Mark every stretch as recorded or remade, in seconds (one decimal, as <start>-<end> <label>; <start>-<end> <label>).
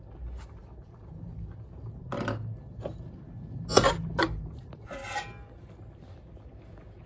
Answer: 0.0-0.6 recorded; 0.6-2.0 remade; 2.0-3.7 recorded; 3.7-4.2 remade; 4.2-7.1 recorded